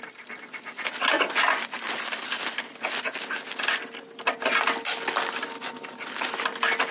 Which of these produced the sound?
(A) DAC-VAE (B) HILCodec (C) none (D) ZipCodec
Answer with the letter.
C